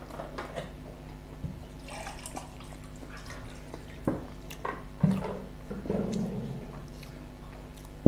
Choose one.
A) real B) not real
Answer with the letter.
A